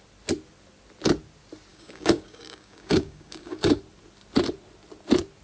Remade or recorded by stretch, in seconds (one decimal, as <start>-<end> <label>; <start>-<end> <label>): 0.0-1.7 recorded; 1.7-3.8 remade; 3.8-5.4 recorded